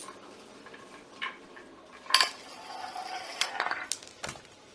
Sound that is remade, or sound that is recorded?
recorded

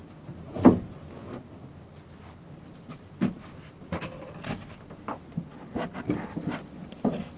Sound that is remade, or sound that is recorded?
recorded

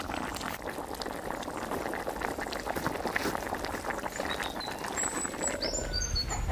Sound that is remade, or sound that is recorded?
recorded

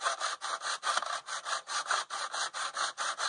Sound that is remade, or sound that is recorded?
recorded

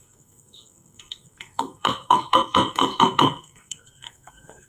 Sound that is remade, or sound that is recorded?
remade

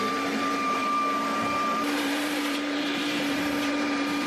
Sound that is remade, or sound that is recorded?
remade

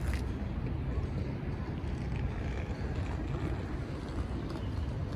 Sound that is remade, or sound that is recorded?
recorded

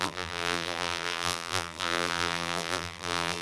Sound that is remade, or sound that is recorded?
remade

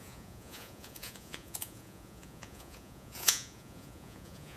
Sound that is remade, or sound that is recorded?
remade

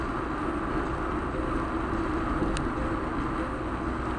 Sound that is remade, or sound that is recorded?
recorded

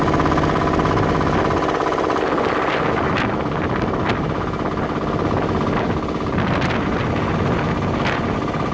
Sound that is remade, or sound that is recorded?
recorded